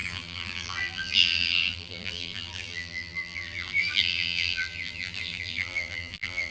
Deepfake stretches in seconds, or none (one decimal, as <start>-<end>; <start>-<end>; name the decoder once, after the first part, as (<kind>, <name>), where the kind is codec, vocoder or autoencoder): 0.0-6.5 (vocoder, BigVGAN v2)